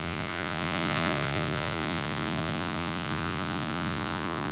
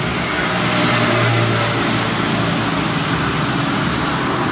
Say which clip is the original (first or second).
second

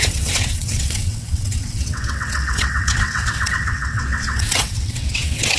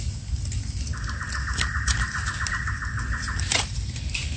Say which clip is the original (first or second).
second